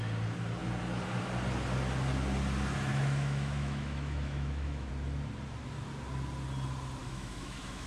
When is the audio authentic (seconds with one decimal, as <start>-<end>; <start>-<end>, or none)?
0.0-2.9; 4.9-7.0